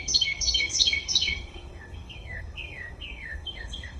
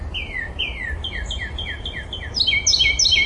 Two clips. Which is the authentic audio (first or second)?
second